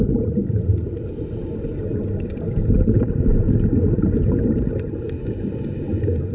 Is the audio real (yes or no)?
yes